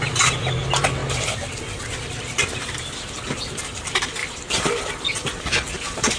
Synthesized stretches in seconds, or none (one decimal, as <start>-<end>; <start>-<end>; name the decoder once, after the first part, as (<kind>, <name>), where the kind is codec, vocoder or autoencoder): 1.0-1.6 (vocoder, BigVGAN v2); 4.2-5.4